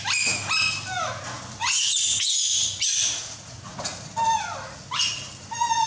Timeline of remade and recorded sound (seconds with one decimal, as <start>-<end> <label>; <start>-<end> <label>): 0.0-1.6 recorded; 1.6-4.1 remade; 4.1-5.9 recorded

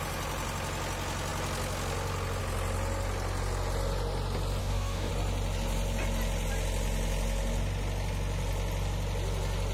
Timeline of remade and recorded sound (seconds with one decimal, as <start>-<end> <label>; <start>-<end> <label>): 0.0-4.6 recorded; 4.6-5.1 remade; 5.1-9.7 recorded

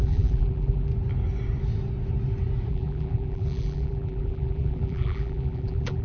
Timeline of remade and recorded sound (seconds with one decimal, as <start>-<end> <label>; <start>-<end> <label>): 0.0-0.9 remade; 0.9-2.7 recorded; 2.7-6.0 remade

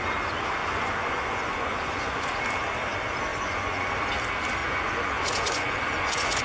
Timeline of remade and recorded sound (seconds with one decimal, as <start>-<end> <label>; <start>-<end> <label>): 0.0-0.6 recorded; 0.6-2.3 remade; 2.3-3.3 recorded; 3.3-3.9 remade; 3.9-4.6 recorded; 4.6-6.4 remade

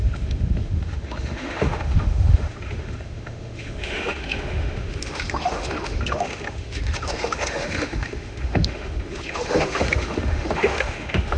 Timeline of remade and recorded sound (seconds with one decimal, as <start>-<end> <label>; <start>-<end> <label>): 0.0-11.4 remade

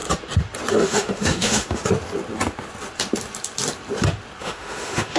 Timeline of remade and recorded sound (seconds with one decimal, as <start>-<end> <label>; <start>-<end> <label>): 0.0-0.7 recorded; 0.7-1.8 remade; 1.8-4.4 recorded; 4.4-5.2 remade